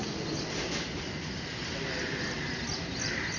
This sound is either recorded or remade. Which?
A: recorded